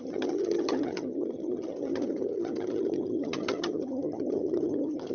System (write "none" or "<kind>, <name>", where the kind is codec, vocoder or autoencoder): vocoder, HiFi-GAN